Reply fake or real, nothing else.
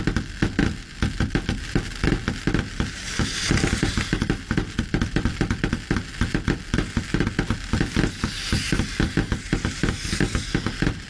real